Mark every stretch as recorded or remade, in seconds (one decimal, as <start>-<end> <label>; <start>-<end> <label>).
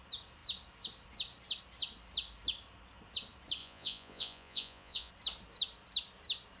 0.0-3.6 recorded; 3.6-5.1 remade; 5.1-6.6 recorded